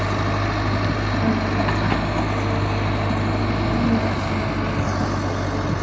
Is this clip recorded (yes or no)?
yes